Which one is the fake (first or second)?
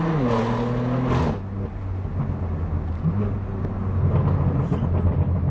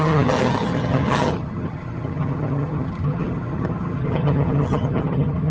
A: second